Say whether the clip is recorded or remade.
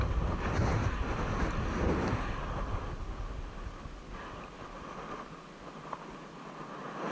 recorded